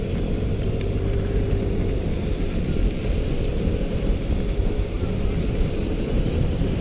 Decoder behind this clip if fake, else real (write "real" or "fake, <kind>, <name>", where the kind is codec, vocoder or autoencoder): fake, vocoder, BigVGAN v2